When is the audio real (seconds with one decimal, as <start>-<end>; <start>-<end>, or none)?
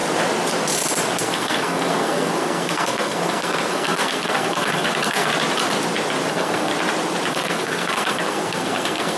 0.0-1.2; 5.3-6.3; 6.7-7.3